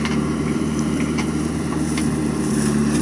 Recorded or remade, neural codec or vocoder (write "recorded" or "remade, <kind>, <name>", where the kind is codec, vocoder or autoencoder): remade, vocoder, BigVGAN v2